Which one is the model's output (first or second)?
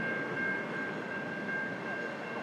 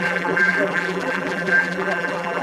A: second